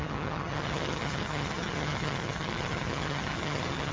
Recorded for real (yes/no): no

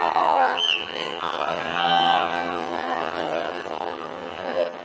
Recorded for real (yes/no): no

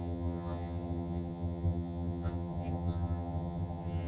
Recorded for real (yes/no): no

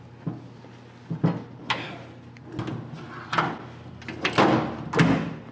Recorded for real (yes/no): yes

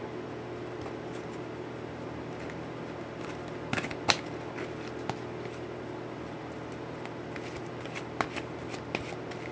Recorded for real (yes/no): yes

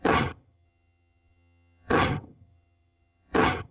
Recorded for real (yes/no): no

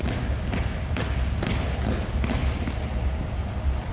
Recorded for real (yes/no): yes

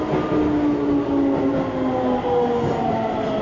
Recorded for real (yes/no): yes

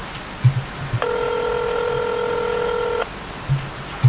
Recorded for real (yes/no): yes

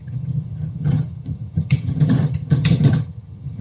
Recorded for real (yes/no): no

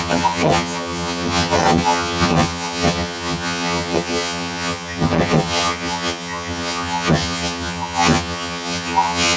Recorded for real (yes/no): no